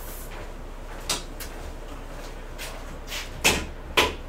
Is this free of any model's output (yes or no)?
yes